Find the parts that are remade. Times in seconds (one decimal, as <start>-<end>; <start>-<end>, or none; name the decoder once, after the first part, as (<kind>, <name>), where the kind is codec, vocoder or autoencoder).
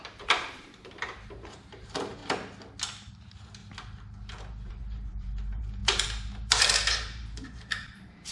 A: 0.0-2.2 (vocoder, BigVGAN v2); 3.1-3.6; 4.7-8.3